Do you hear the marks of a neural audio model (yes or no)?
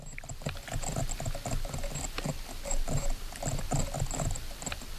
no